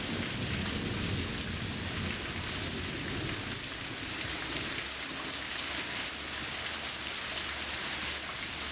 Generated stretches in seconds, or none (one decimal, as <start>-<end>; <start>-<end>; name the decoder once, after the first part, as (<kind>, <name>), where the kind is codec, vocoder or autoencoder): none